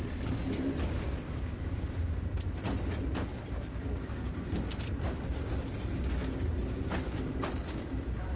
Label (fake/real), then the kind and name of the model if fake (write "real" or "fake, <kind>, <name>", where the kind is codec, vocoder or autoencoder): real